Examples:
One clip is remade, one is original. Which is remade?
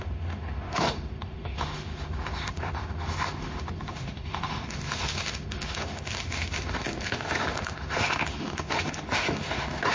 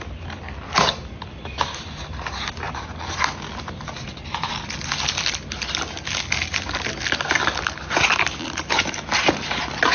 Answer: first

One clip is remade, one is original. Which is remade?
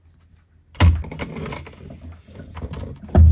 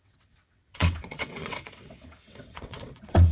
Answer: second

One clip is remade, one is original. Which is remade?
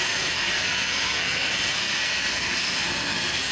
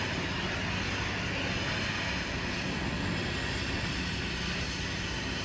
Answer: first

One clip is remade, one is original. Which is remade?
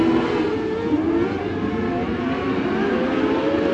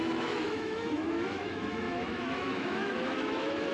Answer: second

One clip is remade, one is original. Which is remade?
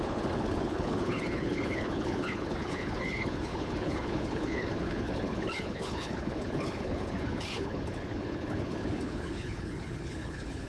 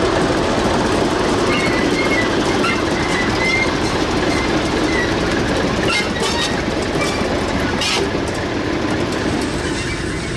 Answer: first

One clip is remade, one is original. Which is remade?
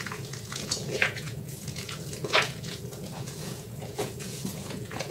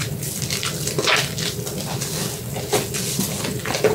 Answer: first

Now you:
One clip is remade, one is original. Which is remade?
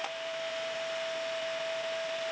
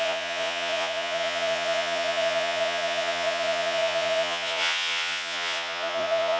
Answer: second